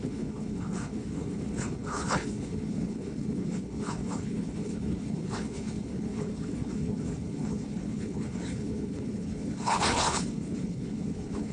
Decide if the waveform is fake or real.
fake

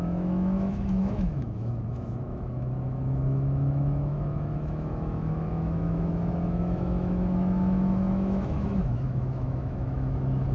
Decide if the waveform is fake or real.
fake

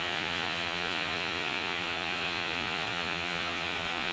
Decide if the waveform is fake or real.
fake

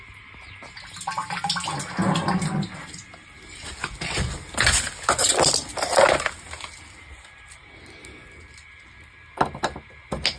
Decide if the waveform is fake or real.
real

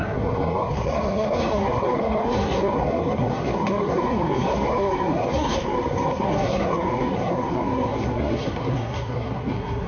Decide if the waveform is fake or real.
fake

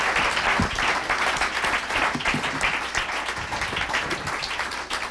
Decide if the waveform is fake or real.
real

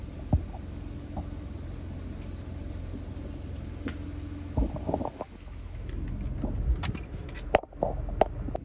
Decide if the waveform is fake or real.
real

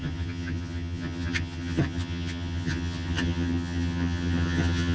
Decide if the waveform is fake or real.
fake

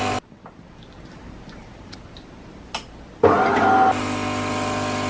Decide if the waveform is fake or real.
real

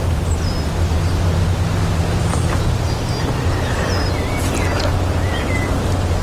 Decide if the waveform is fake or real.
real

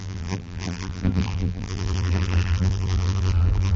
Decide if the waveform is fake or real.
fake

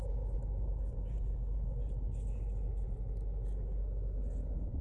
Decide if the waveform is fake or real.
real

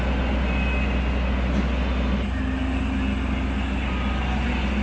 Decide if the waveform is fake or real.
real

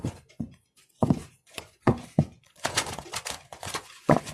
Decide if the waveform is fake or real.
fake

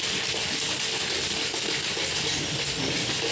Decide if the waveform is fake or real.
real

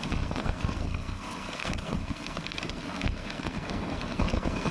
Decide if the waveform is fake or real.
fake